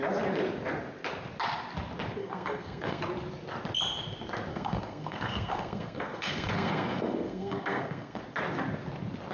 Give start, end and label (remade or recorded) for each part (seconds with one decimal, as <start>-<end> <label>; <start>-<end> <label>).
0.0-2.2 recorded; 2.2-3.0 remade; 3.0-4.5 recorded; 4.5-8.2 remade; 8.2-9.3 recorded